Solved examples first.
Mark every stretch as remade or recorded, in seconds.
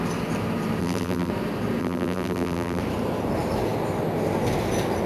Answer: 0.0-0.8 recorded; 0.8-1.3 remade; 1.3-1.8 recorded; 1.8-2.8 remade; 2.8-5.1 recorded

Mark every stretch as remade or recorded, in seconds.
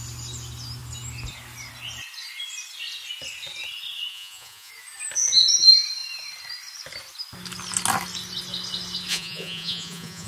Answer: 0.0-4.1 recorded; 4.1-4.7 remade; 4.7-9.1 recorded; 9.1-10.3 remade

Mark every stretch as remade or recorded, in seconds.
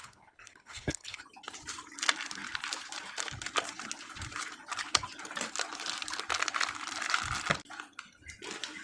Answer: 0.0-1.2 remade; 1.2-8.8 recorded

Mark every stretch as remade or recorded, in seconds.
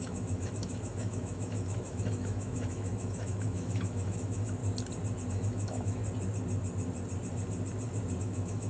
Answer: 0.0-4.6 remade; 4.6-5.3 recorded; 5.3-6.0 remade; 6.0-8.2 recorded; 8.2-8.7 remade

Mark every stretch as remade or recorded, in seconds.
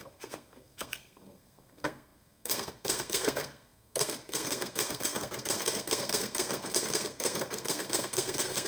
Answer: 0.0-8.7 remade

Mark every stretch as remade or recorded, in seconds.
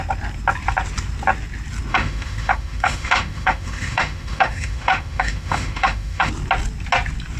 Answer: 0.0-1.9 recorded; 1.9-6.3 remade; 6.3-7.4 recorded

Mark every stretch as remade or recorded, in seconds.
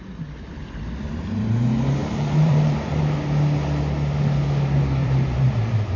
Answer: 0.0-2.0 recorded; 2.0-3.0 remade; 3.0-5.0 recorded; 5.0-6.0 remade